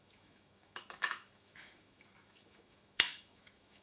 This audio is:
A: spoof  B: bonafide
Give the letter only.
A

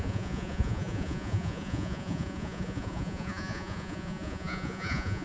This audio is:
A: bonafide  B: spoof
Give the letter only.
B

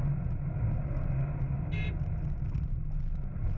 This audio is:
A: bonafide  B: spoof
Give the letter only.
A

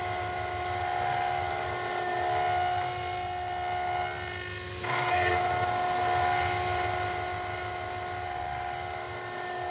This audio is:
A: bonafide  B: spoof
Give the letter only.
A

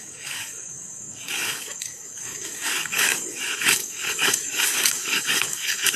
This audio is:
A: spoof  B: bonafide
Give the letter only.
A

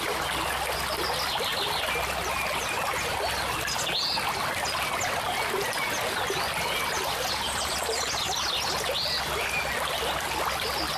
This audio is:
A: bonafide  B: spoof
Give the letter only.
A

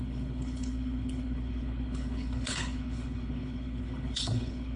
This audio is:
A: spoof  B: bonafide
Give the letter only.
A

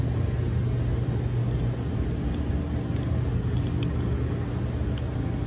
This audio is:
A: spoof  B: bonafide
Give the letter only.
B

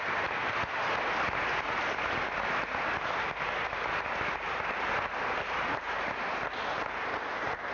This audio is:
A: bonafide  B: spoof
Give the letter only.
A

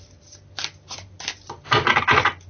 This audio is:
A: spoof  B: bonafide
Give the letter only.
B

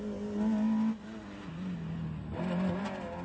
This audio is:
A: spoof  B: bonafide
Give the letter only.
B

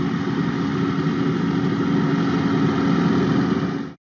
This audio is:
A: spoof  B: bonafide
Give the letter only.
B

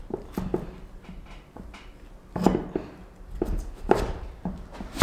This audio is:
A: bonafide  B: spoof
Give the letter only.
A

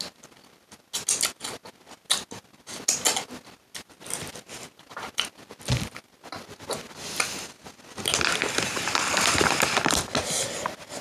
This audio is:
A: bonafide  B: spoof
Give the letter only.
A